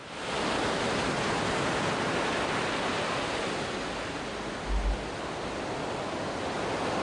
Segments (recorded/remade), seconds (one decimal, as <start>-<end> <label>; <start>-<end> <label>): 0.0-7.0 recorded